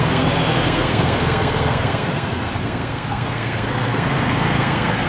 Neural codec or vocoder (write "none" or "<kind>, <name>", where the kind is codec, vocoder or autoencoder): codec, SNAC